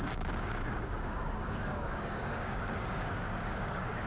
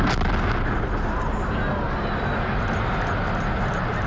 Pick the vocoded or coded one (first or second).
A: first